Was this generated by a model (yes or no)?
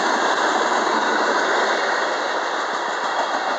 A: no